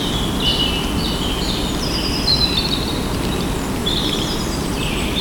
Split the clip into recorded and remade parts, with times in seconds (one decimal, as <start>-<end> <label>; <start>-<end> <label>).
0.0-3.8 recorded; 3.8-4.4 remade; 4.4-5.2 recorded